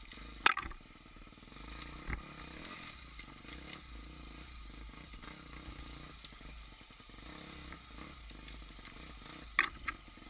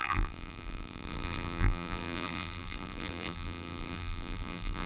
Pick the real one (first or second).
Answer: first